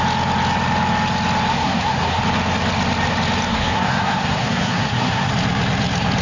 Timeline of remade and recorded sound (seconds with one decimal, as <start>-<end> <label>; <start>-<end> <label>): 0.0-1.5 recorded; 1.5-2.2 remade; 2.2-3.5 recorded; 3.5-5.3 remade; 5.3-6.2 recorded